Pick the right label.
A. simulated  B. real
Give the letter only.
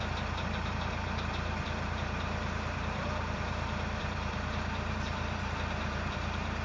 A